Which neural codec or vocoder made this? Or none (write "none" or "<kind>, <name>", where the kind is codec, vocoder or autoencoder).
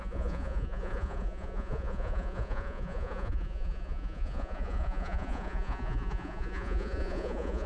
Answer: vocoder, Vocos